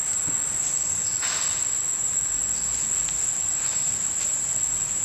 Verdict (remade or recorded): recorded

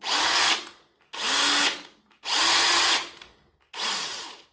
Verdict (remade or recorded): recorded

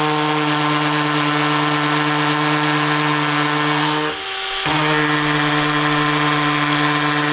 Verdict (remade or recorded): recorded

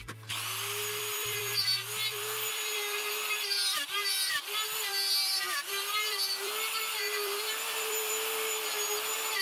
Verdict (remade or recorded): remade